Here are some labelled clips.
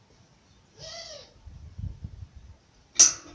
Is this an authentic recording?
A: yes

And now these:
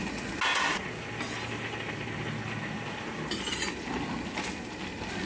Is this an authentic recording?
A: yes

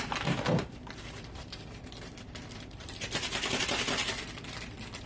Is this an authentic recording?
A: no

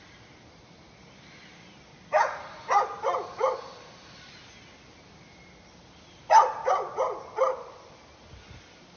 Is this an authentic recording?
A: yes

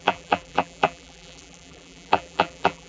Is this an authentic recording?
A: no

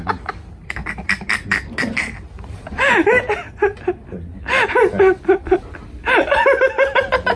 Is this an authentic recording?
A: yes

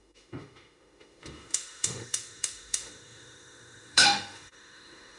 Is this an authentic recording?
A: no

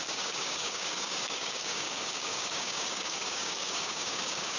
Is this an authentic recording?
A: no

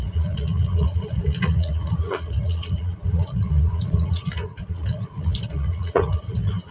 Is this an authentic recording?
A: no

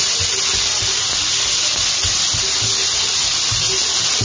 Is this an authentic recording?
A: yes